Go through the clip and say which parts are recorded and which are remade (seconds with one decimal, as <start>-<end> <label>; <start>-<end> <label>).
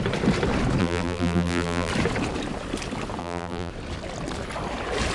0.0-0.8 recorded; 0.8-1.9 remade; 1.9-3.2 recorded; 3.2-3.7 remade; 3.7-5.1 recorded